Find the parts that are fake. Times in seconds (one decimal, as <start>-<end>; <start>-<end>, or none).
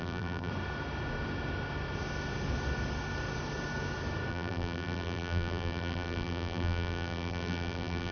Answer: 0.0-0.5; 4.3-8.1